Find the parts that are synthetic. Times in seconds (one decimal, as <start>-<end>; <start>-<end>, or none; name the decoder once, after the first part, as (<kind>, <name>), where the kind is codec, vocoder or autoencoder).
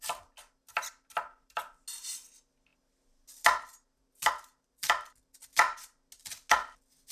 none